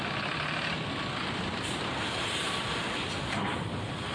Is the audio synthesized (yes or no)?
yes